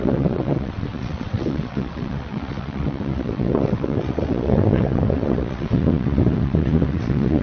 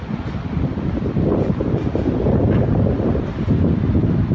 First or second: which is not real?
first